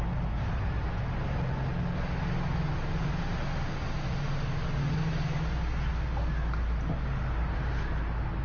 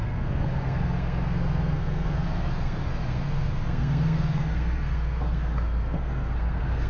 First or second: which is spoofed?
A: second